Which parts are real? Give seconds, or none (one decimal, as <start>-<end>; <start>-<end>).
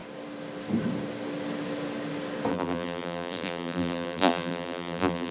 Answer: 0.0-2.5